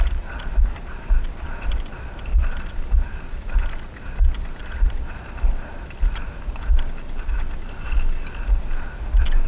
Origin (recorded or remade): recorded